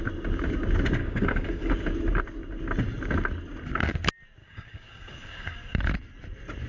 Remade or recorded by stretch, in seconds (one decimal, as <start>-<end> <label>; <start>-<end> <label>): 0.0-1.0 recorded; 1.0-1.7 remade; 1.7-4.4 recorded; 4.4-5.8 remade; 5.8-6.7 recorded

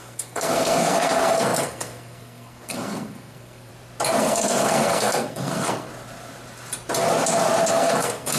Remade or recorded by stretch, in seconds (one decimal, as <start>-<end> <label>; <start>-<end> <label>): 0.0-3.7 remade; 3.7-4.2 recorded; 4.2-5.9 remade; 5.9-7.7 recorded; 7.7-8.4 remade

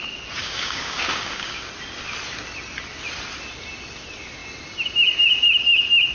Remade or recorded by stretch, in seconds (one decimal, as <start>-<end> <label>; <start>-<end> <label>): 0.0-0.4 recorded; 0.4-1.7 remade; 1.7-6.1 recorded

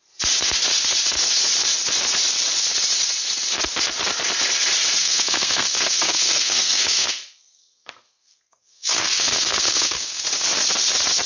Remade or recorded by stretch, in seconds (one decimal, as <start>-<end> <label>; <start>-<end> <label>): 0.0-5.0 recorded; 5.0-10.2 remade; 10.2-11.3 recorded

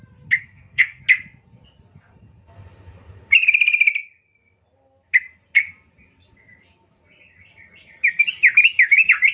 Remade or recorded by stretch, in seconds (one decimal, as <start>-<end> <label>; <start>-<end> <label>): 0.0-0.4 recorded; 0.4-1.0 remade; 1.0-9.3 recorded

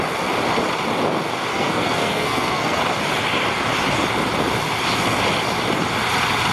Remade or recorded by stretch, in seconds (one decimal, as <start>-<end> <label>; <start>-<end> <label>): 0.0-1.5 recorded; 1.5-2.8 remade; 2.8-6.5 recorded

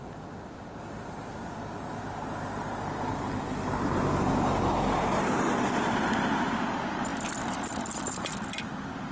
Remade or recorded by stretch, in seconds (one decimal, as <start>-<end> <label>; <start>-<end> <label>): 0.0-7.1 recorded; 7.1-8.2 remade; 8.2-9.1 recorded

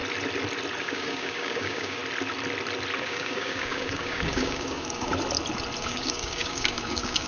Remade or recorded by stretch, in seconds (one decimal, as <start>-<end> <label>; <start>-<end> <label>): 0.0-0.8 recorded; 0.8-2.0 remade; 2.0-3.0 recorded; 3.0-5.1 remade; 5.1-5.8 recorded; 5.8-7.3 remade